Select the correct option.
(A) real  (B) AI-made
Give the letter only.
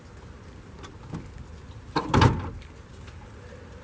A